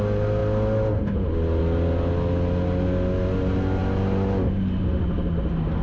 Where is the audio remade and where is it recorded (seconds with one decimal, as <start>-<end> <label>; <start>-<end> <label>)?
0.0-5.8 recorded